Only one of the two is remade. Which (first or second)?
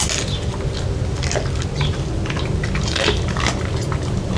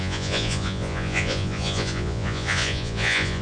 second